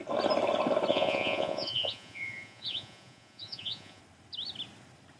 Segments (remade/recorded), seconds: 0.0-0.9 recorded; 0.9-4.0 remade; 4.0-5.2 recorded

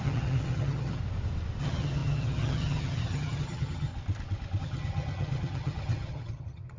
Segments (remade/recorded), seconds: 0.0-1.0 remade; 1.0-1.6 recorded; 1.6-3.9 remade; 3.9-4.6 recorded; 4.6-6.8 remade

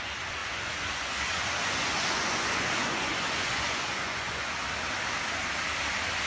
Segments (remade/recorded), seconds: 0.0-4.6 remade; 4.6-6.3 recorded

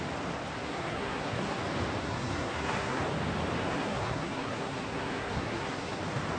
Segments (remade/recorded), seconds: 0.0-0.6 recorded; 0.6-1.6 remade; 1.6-2.0 recorded; 2.0-3.0 remade; 3.0-3.6 recorded; 3.6-6.0 remade; 6.0-6.4 recorded